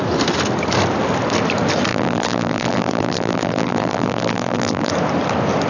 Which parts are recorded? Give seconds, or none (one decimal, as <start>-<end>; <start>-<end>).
0.0-1.9; 4.9-5.7